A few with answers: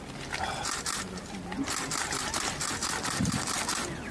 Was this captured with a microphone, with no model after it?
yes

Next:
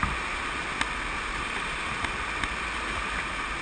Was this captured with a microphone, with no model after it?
yes